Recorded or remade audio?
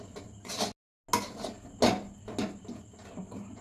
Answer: recorded